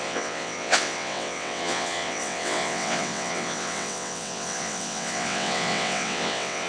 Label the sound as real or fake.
fake